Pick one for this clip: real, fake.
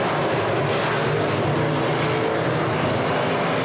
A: real